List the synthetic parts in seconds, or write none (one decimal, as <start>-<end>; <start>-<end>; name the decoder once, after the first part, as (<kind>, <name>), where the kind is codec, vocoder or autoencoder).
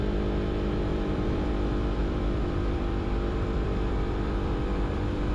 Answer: 0.9-1.5 (vocoder, BigVGAN v2); 2.0-5.3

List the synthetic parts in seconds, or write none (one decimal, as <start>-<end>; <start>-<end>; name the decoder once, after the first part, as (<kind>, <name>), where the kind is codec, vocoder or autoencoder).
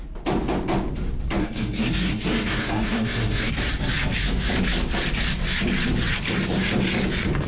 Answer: 1.4-3.5 (codec, SNAC)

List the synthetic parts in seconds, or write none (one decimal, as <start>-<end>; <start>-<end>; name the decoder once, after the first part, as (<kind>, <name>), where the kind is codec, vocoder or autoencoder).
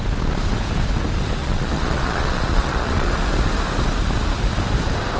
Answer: 1.4-3.1 (vocoder, Vocos)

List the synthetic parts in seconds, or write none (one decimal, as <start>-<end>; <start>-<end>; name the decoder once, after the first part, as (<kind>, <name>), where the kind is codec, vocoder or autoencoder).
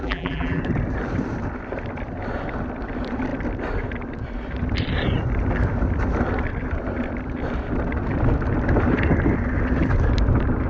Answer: 0.0-0.6 (vocoder, BigVGAN v2)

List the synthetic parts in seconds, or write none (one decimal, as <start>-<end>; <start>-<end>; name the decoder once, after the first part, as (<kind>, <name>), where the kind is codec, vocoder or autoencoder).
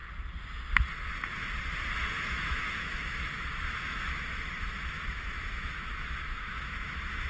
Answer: 2.1-7.3 (autoencoder, DAC-VAE)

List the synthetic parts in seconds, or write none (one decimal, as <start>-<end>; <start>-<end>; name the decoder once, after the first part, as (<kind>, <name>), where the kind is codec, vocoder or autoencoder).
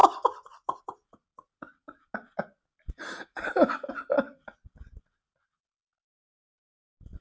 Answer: none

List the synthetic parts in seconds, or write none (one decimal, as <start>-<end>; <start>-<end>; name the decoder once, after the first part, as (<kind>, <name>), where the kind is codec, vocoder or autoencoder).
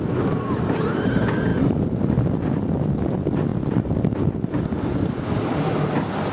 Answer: none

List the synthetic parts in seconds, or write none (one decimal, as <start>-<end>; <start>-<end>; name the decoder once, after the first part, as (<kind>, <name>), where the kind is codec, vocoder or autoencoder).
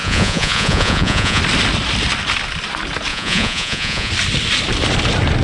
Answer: 0.0-1.4 (vocoder, Vocos); 3.1-4.1